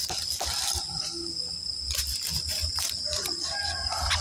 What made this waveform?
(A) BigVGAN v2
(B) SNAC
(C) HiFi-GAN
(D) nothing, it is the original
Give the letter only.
A